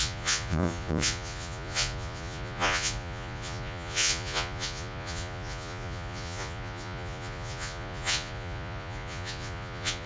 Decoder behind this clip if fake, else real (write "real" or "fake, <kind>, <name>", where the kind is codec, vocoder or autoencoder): fake, vocoder, Vocos